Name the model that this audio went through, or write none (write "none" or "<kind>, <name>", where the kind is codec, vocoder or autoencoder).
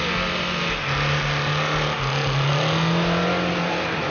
none